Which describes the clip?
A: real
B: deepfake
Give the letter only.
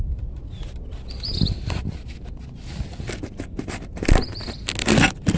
A